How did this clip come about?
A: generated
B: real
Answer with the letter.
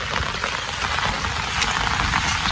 B